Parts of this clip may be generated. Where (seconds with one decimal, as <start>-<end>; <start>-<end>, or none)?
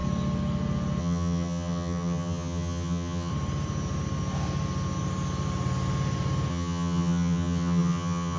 1.0-3.3; 6.5-8.4